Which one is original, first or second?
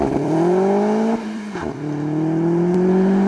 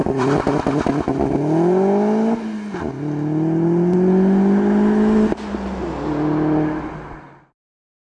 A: second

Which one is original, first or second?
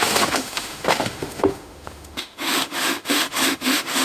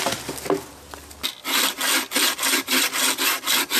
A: second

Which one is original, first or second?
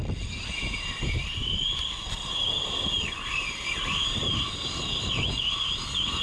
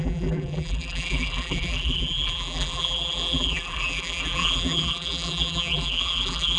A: first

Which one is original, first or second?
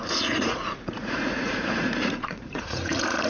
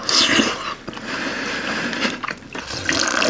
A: second